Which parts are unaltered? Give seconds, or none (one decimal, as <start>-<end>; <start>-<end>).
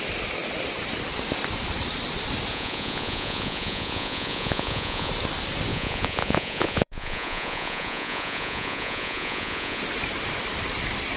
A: 0.0-2.5; 5.1-5.7; 9.8-11.2